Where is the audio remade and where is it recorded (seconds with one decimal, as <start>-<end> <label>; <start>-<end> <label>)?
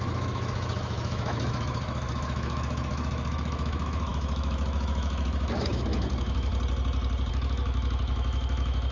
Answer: 0.0-6.5 remade; 6.5-7.3 recorded; 7.3-8.9 remade